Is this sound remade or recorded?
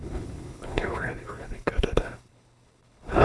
remade